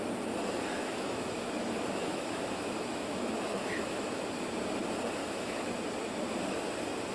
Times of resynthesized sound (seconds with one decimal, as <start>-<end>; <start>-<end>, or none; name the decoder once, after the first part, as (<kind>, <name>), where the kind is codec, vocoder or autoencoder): 0.7-4.2 (autoencoder, DAC-VAE); 5.2-5.7